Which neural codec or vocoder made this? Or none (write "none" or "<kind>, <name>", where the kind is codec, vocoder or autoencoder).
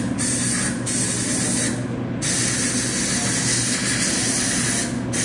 none